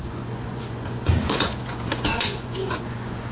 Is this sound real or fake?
fake